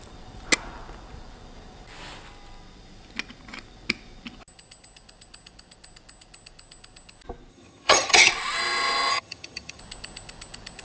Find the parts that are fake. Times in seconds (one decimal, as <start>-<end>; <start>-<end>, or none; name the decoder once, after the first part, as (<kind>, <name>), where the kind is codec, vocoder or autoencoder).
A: 7.5-8.3 (vocoder, HiFi-GAN); 9.1-9.8